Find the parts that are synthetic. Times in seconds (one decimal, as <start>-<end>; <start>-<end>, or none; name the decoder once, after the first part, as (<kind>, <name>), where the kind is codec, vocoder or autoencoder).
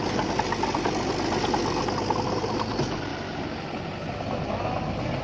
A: none